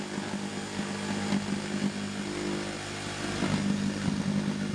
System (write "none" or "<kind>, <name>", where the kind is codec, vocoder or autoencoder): none